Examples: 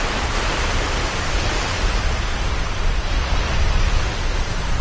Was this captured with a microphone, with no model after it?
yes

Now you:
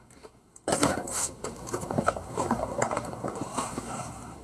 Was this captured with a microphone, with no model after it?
no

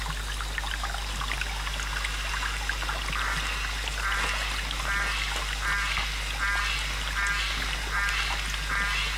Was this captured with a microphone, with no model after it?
yes